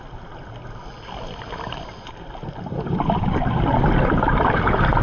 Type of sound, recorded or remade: recorded